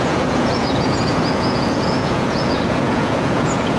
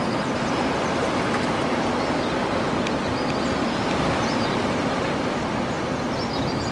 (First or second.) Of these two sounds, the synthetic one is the first